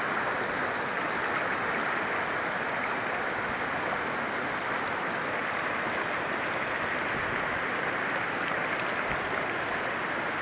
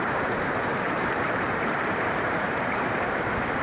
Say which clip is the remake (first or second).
second